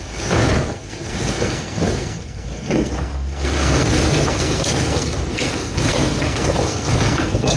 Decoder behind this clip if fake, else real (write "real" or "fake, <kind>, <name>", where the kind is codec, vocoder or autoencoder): fake, codec, SNAC